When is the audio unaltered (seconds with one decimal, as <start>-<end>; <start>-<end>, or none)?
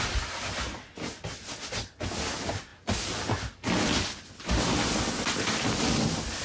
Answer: 0.0-6.4